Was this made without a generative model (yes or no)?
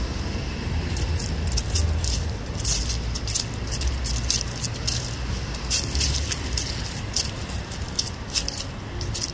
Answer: yes